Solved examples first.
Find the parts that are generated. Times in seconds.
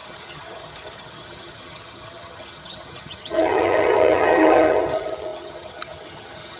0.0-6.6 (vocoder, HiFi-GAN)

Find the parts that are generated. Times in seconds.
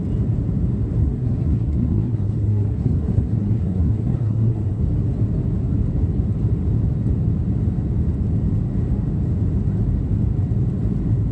1.0-4.8 (codec, SNAC)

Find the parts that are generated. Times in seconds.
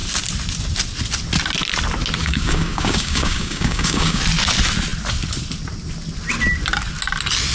2.2-4.2 (codec, DAC)